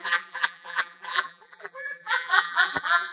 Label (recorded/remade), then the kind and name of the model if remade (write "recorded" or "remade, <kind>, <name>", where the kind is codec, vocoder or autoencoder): remade, vocoder, BigVGAN v2